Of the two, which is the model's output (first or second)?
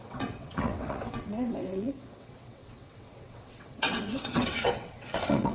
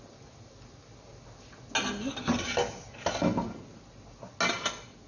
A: first